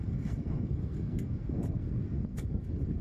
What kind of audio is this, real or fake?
fake